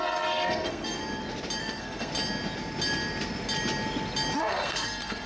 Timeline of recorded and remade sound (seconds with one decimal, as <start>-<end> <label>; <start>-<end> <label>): 0.0-1.0 remade; 1.0-1.6 recorded; 1.6-2.1 remade; 2.1-4.4 recorded; 4.4-5.3 remade